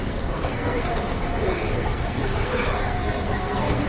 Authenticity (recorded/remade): remade